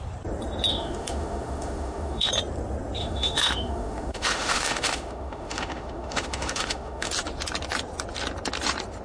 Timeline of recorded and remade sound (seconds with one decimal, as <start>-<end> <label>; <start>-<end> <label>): 0.0-0.7 recorded; 0.7-2.3 remade; 2.3-3.0 recorded; 3.0-7.1 remade; 7.1-9.0 recorded